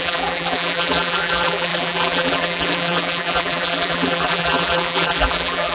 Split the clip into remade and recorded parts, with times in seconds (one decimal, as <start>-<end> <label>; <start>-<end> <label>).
0.0-5.7 remade